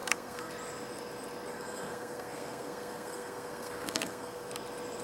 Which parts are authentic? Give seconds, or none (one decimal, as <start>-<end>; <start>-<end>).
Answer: 0.5-1.5; 4.5-5.0